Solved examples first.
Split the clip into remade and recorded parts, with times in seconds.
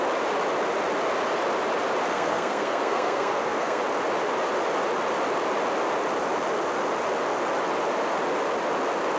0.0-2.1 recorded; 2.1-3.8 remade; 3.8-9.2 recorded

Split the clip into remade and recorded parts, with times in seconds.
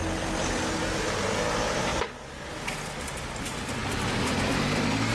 0.0-5.1 recorded